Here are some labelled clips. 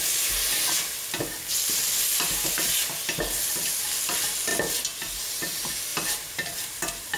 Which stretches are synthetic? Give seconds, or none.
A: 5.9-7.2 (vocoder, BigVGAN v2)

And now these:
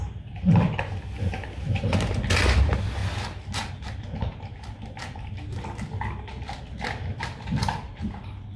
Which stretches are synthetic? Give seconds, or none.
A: none

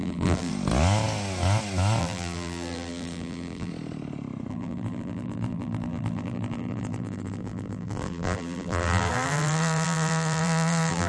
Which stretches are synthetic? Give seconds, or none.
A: 0.0-0.5 (vocoder, BigVGAN v2); 2.0-3.7; 4.5-11.1

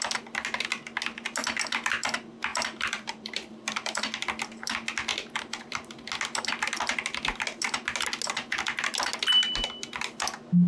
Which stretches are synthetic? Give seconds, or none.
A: 2.5-4.0 (vocoder, BigVGAN v2); 5.1-6.1